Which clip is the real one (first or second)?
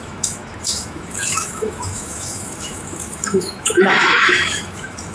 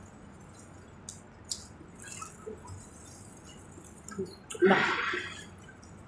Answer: second